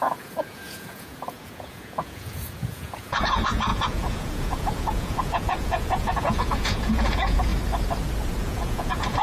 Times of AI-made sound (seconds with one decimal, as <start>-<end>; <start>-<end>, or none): 0.0-7.5; 8.4-9.2